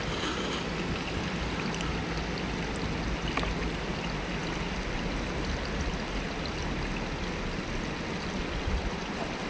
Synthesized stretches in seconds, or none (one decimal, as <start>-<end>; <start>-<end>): none